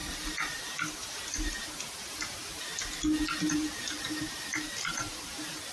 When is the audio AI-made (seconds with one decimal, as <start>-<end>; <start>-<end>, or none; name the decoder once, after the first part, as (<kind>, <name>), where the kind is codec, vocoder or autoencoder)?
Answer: none

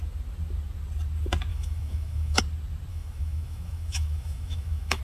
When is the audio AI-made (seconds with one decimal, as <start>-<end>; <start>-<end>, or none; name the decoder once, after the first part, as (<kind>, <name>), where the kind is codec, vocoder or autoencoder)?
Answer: 1.5-2.4 (autoencoder, DAC-VAE); 2.9-5.0

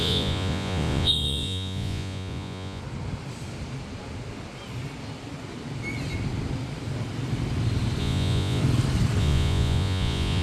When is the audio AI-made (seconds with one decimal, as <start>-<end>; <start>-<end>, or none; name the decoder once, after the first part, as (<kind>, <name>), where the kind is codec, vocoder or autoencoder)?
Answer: 0.0-2.8 (vocoder, Vocos); 8.0-8.6; 9.2-10.4

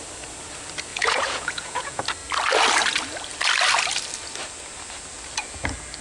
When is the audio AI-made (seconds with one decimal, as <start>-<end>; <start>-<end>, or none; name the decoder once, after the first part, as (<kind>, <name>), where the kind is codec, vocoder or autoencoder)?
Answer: 0.9-2.0 (vocoder, Vocos)

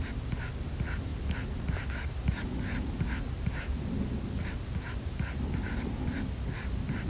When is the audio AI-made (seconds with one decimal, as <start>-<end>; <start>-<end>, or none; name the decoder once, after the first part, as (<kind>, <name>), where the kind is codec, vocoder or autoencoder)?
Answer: none

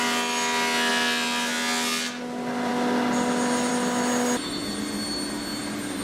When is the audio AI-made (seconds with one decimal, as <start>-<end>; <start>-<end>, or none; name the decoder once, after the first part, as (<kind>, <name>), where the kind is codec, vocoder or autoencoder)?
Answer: none

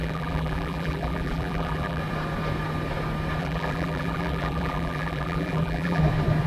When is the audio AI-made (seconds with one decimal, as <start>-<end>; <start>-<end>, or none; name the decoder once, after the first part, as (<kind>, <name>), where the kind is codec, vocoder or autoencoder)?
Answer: 0.0-2.0 (vocoder, BigVGAN v2); 3.4-6.0

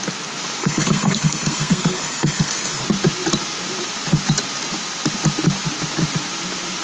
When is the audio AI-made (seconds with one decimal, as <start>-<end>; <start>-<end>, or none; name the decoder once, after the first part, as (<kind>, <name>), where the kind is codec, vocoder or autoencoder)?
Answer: 0.6-2.8 (codec, SNAC)